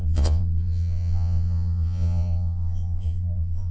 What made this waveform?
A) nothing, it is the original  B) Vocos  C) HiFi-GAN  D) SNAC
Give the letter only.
B